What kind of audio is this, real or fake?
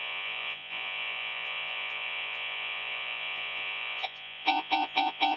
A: fake